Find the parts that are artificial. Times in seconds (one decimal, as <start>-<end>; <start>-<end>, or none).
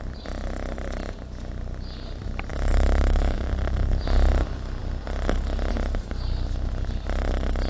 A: 2.5-3.5